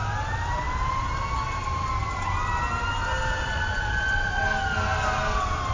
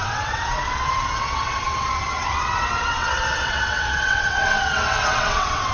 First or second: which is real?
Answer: first